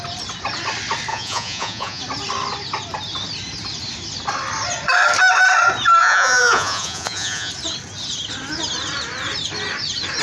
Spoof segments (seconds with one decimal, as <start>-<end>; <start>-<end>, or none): 1.1-2.0; 6.0-7.5